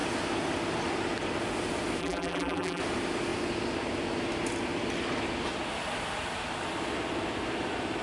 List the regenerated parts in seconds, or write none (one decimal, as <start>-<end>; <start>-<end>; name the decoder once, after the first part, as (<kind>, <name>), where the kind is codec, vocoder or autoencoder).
2.0-2.8 (vocoder, BigVGAN v2)